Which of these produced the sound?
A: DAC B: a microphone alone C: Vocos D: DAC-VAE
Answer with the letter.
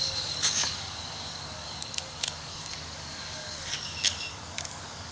A